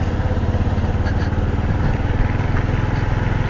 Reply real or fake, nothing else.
real